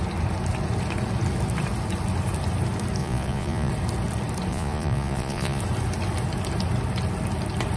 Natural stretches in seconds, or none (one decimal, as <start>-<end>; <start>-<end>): 0.0-3.0; 3.7-4.5; 5.6-7.8